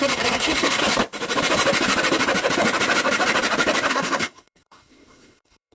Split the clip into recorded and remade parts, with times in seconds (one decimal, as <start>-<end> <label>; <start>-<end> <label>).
0.0-0.8 remade; 0.8-3.9 recorded; 3.9-5.7 remade